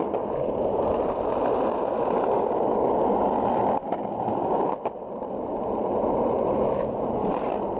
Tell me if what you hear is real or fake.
real